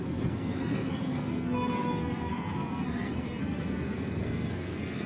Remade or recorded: remade